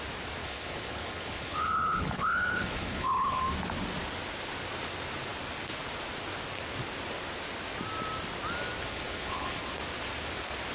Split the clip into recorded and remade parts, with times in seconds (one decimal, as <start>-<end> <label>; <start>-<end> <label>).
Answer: 0.0-0.4 recorded; 0.4-3.4 remade; 3.4-8.8 recorded; 8.8-9.6 remade; 9.6-10.7 recorded